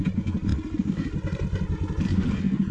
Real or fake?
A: real